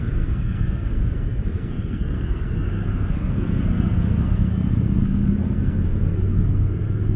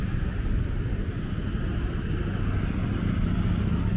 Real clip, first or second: second